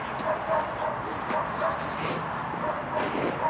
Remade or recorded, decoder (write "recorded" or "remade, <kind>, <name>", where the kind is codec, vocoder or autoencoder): recorded